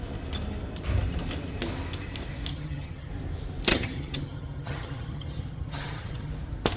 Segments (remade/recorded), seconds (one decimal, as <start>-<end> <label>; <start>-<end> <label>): 0.0-2.5 recorded; 2.5-3.1 remade; 3.1-3.7 recorded; 3.7-6.3 remade; 6.3-6.8 recorded